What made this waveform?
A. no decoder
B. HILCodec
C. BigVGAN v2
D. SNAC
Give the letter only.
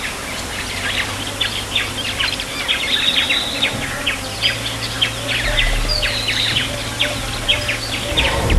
A